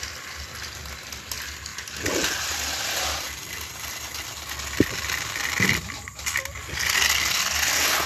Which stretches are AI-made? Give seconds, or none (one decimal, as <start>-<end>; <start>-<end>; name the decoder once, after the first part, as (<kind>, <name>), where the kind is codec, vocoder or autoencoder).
none